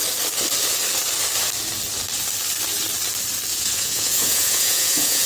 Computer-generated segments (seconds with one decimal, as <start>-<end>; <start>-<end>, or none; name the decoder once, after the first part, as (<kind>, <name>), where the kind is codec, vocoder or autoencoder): 3.5-5.3 (vocoder, Vocos)